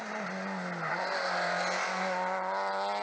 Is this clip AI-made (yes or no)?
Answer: no